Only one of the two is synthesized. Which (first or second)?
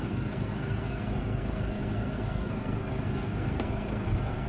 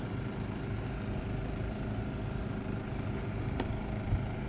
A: first